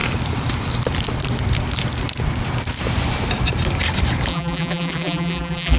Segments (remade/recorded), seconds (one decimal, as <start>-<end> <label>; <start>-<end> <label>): 0.0-4.3 recorded; 4.3-5.8 remade